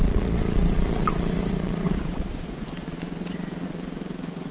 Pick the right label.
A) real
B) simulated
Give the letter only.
B